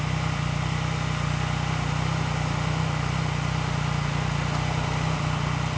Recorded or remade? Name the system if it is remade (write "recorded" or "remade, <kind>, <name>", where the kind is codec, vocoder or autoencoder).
recorded